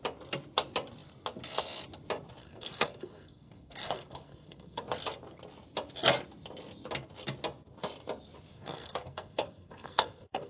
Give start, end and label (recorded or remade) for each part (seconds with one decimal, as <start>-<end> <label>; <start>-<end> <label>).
0.0-2.4 recorded; 2.4-4.8 remade; 4.8-8.5 recorded; 8.5-10.5 remade